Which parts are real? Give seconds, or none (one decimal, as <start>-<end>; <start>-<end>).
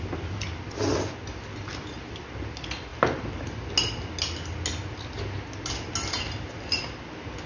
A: 0.0-7.5